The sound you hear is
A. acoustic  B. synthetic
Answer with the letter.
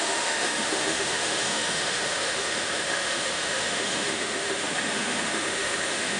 B